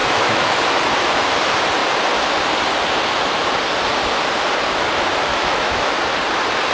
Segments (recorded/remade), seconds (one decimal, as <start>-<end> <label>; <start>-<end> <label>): 0.0-0.6 remade; 0.6-5.3 recorded; 5.3-5.9 remade; 5.9-6.7 recorded

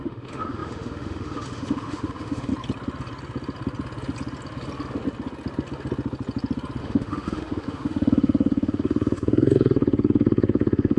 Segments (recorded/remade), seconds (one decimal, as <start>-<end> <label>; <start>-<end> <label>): 0.0-2.5 remade; 2.5-6.8 recorded; 6.8-11.0 remade

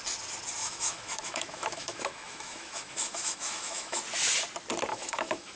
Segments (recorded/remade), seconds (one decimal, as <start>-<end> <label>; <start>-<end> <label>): 0.0-0.6 recorded; 0.6-4.0 remade; 4.0-4.9 recorded; 4.9-5.6 remade

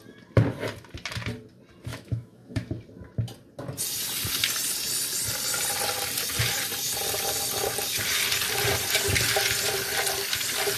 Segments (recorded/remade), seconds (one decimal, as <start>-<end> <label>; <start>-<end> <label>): 0.0-1.9 recorded; 1.9-2.7 remade; 2.7-10.8 recorded

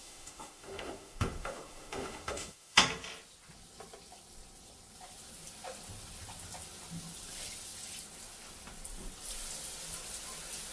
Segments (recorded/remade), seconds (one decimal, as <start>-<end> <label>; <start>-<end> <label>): 0.0-2.8 remade; 2.8-10.7 recorded

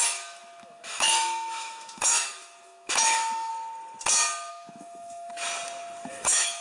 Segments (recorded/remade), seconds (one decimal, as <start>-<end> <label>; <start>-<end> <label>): 0.0-3.5 remade; 3.5-4.5 recorded; 4.5-5.3 remade; 5.3-6.1 recorded; 6.1-6.6 remade

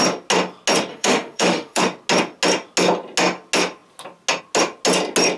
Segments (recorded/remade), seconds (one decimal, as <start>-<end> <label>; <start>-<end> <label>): 0.0-0.9 recorded; 0.9-1.8 remade; 1.8-5.4 recorded

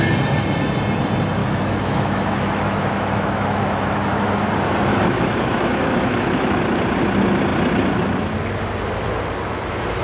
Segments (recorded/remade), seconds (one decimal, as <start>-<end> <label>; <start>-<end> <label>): 0.0-1.4 recorded; 1.4-4.3 remade; 4.3-4.9 recorded; 4.9-6.6 remade; 6.6-10.0 recorded